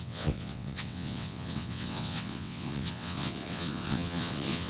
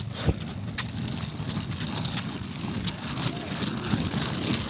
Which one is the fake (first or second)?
first